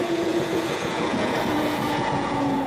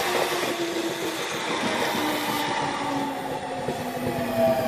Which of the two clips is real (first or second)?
second